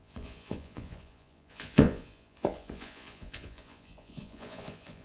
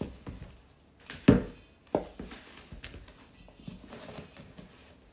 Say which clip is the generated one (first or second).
first